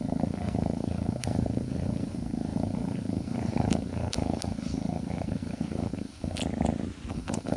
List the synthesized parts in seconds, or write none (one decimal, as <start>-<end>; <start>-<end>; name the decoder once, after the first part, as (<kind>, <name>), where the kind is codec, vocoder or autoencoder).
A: 0.0-6.4 (codec, SNAC); 7.1-7.6